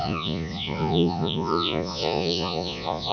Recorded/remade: remade